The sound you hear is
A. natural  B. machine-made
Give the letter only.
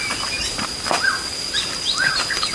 A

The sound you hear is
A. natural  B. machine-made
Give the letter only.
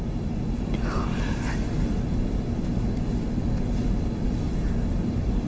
A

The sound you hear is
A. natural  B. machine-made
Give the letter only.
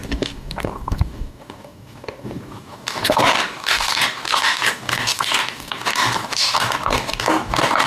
B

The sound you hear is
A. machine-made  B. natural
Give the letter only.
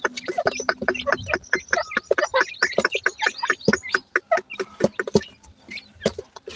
B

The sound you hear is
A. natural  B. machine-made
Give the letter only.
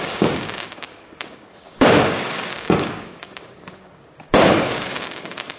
B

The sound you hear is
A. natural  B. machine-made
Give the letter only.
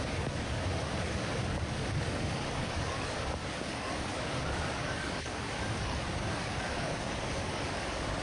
B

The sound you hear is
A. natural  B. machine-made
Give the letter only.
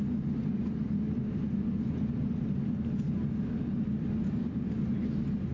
A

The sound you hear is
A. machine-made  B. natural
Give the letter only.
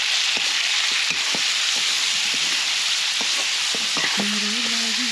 B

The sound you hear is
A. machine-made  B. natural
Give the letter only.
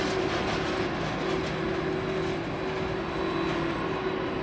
B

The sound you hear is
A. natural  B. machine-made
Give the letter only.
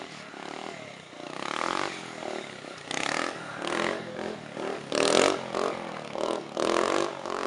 B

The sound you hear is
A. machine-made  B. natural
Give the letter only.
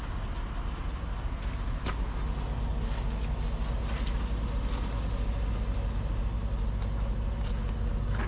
B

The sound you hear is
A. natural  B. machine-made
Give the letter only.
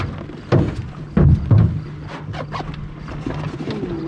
A